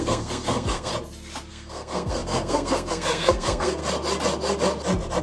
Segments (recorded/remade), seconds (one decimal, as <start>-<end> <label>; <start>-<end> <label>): 0.0-0.9 remade; 0.9-1.5 recorded; 1.5-3.8 remade; 3.8-5.2 recorded